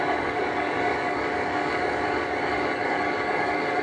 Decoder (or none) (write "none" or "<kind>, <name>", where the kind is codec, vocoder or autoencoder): codec, DAC